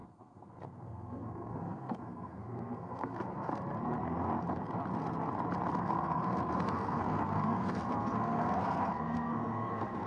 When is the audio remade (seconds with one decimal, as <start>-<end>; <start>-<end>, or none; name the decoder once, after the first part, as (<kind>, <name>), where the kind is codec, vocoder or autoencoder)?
0.0-3.5 (codec, SNAC); 5.8-10.1